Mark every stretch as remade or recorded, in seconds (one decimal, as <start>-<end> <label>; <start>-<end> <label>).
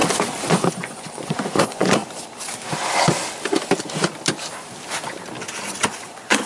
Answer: 0.0-0.5 recorded; 0.5-2.0 remade; 2.0-5.9 recorded; 5.9-6.5 remade